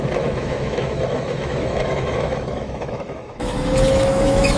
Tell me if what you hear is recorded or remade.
remade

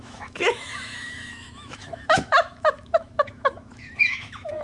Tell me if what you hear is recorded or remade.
remade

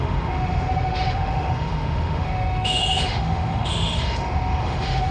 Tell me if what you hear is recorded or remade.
remade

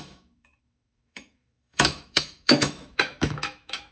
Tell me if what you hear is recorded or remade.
remade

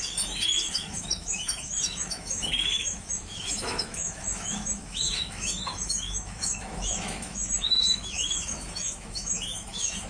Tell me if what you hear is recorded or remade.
remade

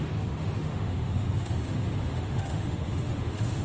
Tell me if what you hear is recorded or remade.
remade